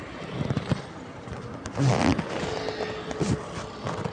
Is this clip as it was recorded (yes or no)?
no